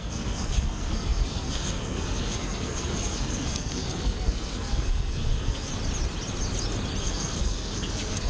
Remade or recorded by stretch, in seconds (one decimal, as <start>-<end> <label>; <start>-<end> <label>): 0.0-5.7 remade; 5.7-7.0 recorded; 7.0-8.3 remade